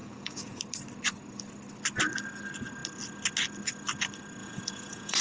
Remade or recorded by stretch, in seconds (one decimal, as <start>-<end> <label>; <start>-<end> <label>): 0.0-0.6 remade; 0.6-4.4 recorded; 4.4-5.2 remade